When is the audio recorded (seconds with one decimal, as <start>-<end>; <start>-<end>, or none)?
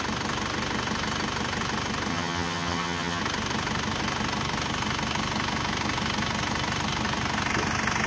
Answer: 0.0-2.1; 3.2-8.1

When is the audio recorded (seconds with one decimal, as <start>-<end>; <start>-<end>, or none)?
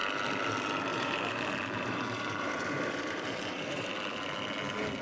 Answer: 0.0-0.9; 3.9-5.0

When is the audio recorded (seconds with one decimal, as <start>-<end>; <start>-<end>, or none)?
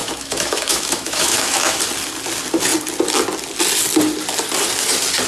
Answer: 1.8-5.3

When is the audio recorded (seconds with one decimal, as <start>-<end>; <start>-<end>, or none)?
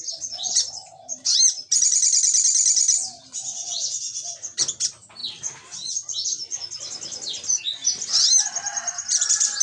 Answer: 0.0-9.6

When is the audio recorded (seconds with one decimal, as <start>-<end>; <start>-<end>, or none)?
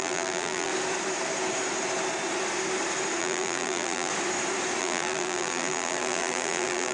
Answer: 0.7-3.2; 4.1-4.8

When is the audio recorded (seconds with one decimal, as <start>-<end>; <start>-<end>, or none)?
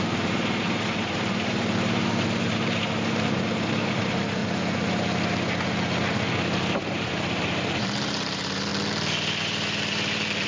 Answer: 4.4-6.6; 8.7-9.4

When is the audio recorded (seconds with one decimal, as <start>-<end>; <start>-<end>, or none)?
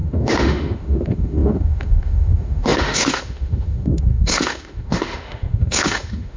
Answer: none